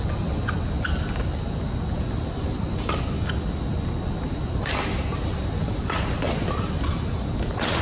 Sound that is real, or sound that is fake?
real